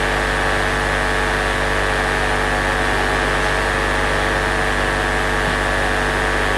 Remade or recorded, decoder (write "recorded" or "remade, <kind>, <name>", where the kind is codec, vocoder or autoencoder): recorded